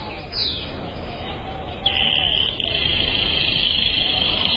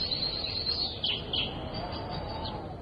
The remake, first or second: first